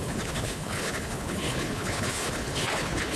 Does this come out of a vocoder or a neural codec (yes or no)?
yes